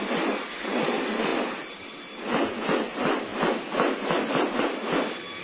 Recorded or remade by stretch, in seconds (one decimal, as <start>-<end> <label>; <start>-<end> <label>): 0.0-5.4 recorded